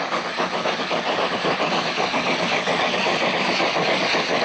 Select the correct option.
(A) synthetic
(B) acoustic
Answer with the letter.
A